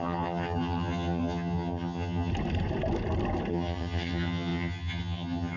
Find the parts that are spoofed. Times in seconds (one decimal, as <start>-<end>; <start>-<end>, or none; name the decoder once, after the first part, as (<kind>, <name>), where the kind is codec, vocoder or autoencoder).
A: 0.0-2.3 (vocoder, HiFi-GAN); 3.5-5.6